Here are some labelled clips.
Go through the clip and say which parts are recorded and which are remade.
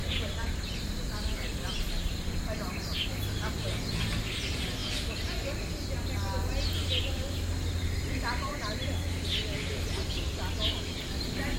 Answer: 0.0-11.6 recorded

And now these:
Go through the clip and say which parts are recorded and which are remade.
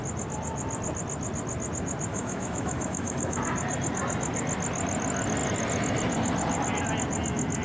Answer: 0.0-2.1 recorded; 2.1-3.4 remade; 3.4-7.6 recorded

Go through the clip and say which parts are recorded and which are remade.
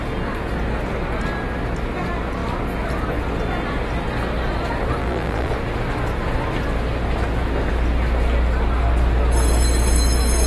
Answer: 0.0-5.0 recorded; 5.0-5.5 remade; 5.5-10.5 recorded